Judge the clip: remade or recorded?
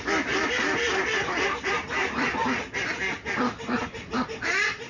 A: recorded